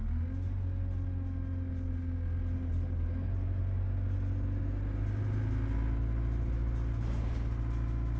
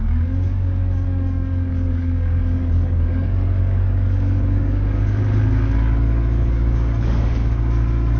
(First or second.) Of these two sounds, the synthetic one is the second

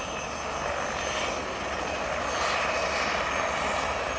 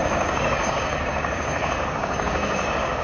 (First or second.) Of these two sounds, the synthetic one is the second